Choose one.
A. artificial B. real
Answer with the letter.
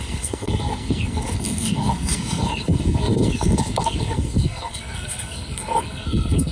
A